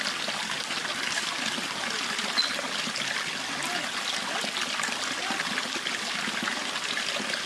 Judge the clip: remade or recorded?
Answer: recorded